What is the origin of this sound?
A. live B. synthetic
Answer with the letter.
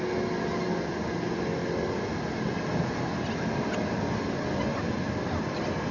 A